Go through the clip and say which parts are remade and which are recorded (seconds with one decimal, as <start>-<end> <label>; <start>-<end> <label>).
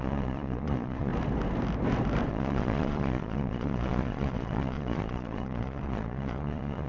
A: 0.0-1.1 remade; 1.1-2.3 recorded; 2.3-6.9 remade